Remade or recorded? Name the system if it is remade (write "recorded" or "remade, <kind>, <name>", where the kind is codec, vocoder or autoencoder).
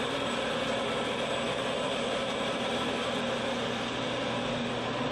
recorded